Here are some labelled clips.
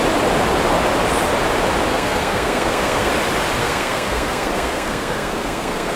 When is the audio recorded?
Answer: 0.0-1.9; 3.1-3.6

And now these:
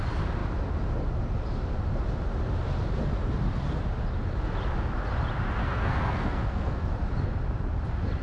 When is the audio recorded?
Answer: 0.0-5.6; 6.9-8.2

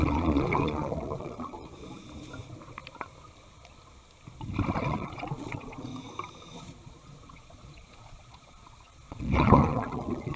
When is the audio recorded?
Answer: 1.7-4.8; 5.9-6.6

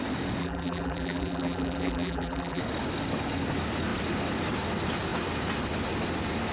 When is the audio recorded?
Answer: 0.0-0.4; 2.6-6.5